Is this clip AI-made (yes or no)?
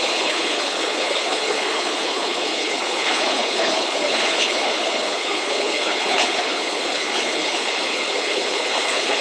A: yes